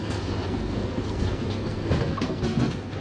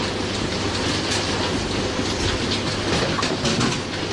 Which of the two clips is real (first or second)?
second